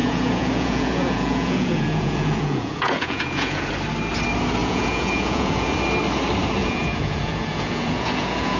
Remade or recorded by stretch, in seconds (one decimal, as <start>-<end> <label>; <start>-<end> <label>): 0.0-3.7 remade; 3.7-4.6 recorded; 4.6-5.7 remade; 5.7-6.6 recorded; 6.6-8.6 remade